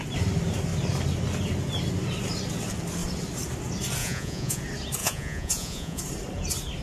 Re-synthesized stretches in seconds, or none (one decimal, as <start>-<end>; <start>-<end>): 4.0-4.6; 5.0-6.0